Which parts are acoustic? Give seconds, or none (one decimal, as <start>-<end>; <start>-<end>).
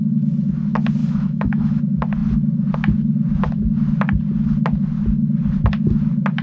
0.0-1.0; 1.8-6.4